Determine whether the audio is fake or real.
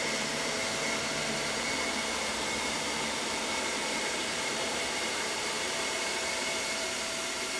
fake